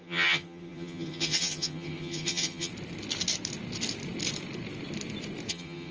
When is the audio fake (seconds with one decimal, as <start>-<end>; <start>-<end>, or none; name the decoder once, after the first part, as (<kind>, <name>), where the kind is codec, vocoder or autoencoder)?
0.0-2.7 (vocoder, HiFi-GAN); 5.5-5.9